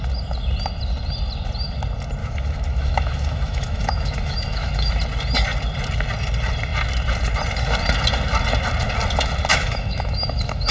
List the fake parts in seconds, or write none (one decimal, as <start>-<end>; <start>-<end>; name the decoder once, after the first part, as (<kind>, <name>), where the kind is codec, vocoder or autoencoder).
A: 2.2-4.9 (autoencoder, DAC-VAE); 9.5-10.7